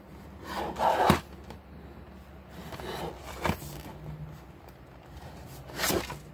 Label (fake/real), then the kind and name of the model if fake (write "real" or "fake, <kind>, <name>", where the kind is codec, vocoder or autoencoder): real